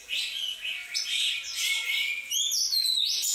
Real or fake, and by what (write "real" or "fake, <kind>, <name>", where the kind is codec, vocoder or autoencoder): real